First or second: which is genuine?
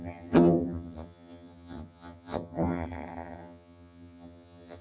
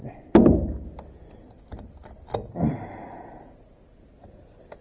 second